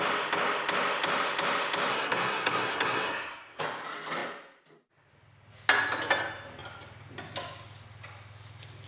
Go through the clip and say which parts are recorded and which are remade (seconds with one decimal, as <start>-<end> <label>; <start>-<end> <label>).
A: 0.0-1.9 recorded; 1.9-3.6 remade; 3.6-8.9 recorded